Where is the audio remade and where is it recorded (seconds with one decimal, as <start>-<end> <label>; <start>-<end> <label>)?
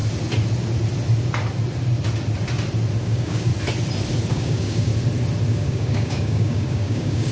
0.0-3.0 recorded; 3.0-3.5 remade; 3.5-4.3 recorded; 4.3-4.9 remade; 4.9-5.5 recorded; 5.5-7.3 remade